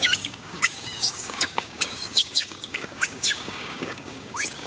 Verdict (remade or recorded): remade